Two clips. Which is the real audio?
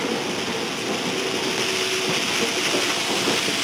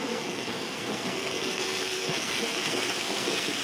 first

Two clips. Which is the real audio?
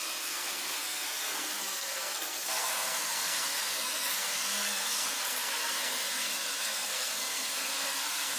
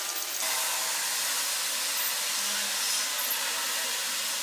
second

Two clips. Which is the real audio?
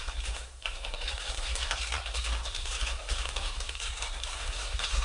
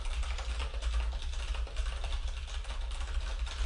second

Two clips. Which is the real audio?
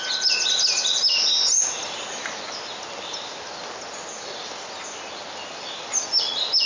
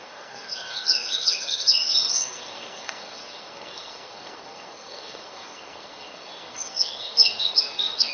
first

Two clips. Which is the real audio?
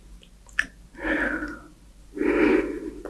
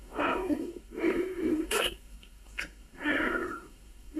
first